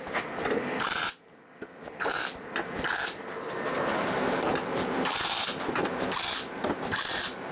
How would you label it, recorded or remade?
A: remade